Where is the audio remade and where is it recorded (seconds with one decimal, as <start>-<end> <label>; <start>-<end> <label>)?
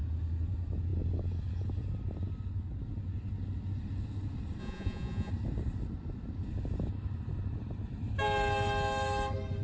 0.0-4.6 recorded; 4.6-5.3 remade; 5.3-9.6 recorded